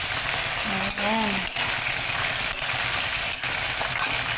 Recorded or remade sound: recorded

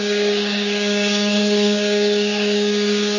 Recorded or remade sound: remade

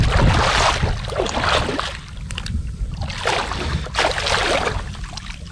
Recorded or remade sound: recorded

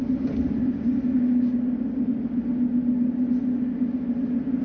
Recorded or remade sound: recorded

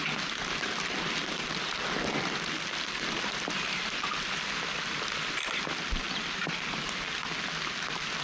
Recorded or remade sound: recorded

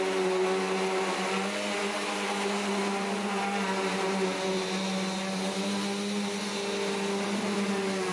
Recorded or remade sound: recorded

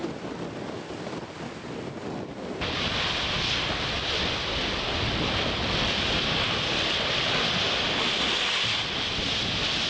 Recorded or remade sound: recorded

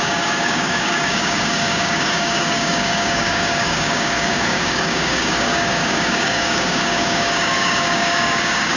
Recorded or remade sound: remade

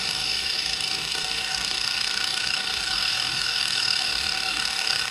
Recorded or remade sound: remade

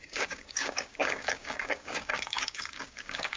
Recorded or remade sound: remade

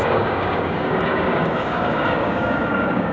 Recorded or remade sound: remade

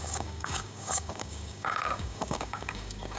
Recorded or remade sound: remade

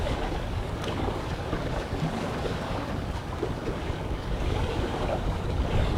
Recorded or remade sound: remade